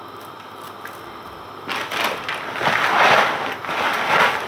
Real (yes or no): yes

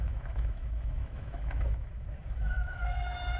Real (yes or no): no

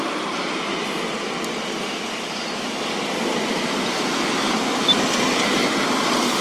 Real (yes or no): yes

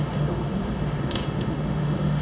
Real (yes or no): no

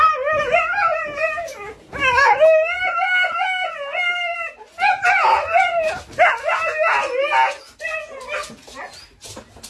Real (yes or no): yes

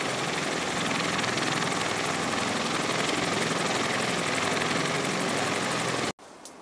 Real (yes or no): yes